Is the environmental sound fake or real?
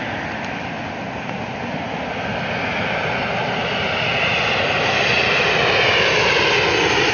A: real